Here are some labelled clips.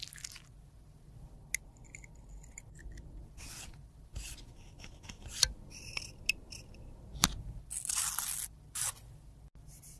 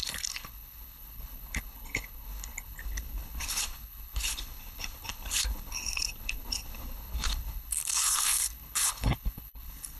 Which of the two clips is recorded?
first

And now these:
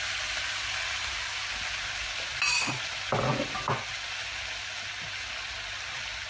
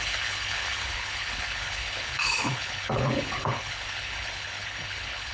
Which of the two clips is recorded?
first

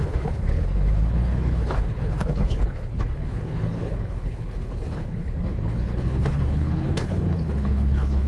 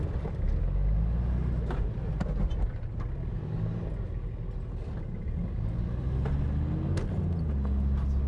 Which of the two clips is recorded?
second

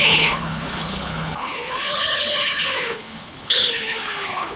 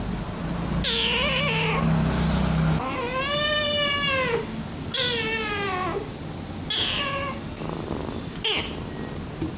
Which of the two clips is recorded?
second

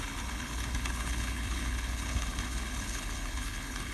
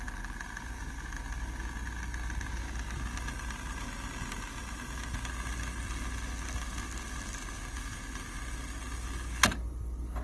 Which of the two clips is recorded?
second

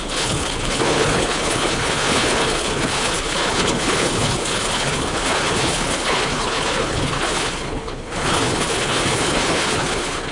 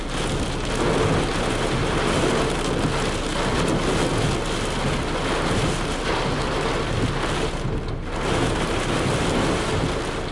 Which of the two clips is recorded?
second